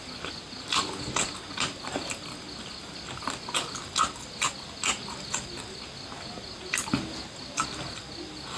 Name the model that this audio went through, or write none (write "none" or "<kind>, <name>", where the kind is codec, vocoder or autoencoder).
none